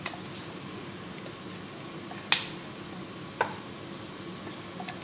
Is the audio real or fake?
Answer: real